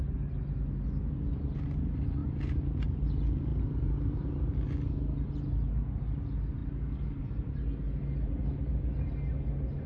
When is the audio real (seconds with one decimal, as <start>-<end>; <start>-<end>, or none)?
0.0-3.5; 4.3-9.9

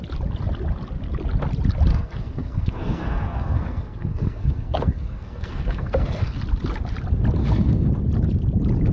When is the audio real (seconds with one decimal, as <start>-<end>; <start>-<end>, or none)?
0.0-1.9; 6.4-7.4; 7.9-8.9

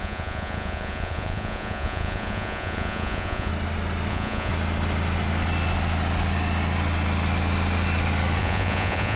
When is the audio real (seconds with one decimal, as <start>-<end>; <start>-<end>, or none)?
3.5-4.1; 4.5-8.4

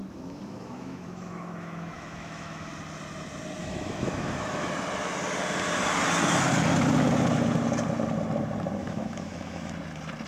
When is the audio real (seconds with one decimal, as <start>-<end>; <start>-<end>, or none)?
2.7-3.6; 4.7-8.8; 9.7-10.3

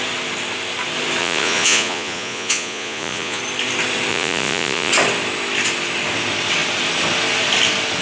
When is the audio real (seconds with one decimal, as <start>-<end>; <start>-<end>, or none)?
0.0-1.2; 3.4-4.1; 4.9-8.0